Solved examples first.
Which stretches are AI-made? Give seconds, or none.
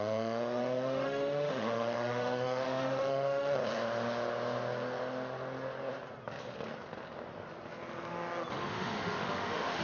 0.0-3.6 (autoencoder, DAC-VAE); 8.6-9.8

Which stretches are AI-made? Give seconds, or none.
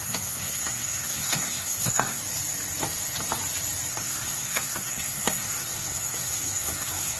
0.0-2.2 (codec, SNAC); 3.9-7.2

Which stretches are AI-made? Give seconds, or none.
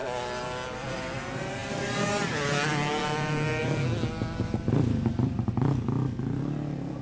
none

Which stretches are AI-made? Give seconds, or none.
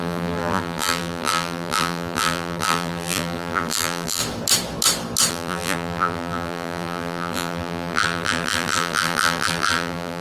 0.0-4.2 (vocoder, BigVGAN v2); 5.3-10.2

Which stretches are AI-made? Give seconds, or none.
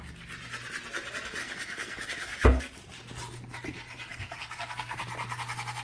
1.4-2.6 (codec, SNAC); 4.1-5.0